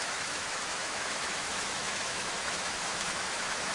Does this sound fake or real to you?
fake